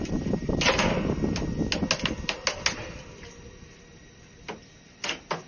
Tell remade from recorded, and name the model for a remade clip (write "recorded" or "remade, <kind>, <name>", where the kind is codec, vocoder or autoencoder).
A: recorded